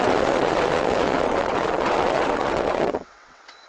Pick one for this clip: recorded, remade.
remade